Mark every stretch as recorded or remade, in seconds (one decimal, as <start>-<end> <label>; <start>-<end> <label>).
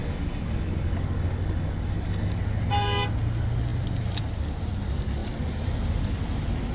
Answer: 0.0-2.4 remade; 2.4-6.7 recorded